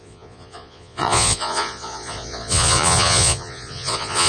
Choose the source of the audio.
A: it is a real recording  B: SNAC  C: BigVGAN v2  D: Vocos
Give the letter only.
D